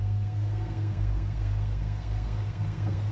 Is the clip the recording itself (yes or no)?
no